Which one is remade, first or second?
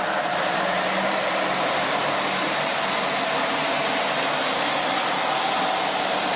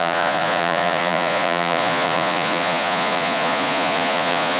second